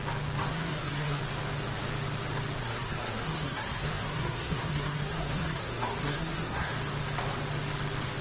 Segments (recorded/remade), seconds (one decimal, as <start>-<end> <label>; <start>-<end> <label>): 0.0-0.5 recorded; 0.5-1.2 remade; 1.2-2.6 recorded; 2.6-6.7 remade; 6.7-8.2 recorded